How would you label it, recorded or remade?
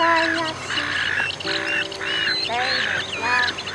recorded